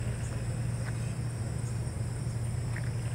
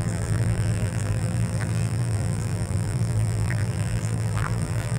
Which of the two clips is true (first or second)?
first